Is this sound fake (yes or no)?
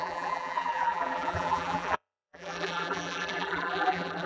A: yes